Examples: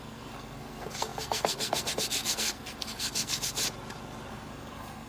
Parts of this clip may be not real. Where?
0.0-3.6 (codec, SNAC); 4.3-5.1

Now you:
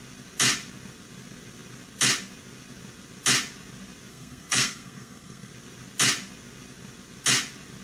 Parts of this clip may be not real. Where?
4.1-5.5 (codec, SNAC)

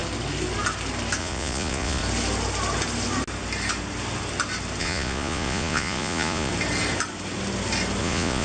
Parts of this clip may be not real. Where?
1.2-2.0 (vocoder, Vocos); 4.8-6.5; 8.0-8.4

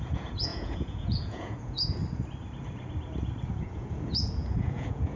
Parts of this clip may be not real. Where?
0.0-2.0 (vocoder, Vocos); 3.5-5.2